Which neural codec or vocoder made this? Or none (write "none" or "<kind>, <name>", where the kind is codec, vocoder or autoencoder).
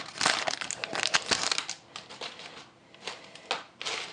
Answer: none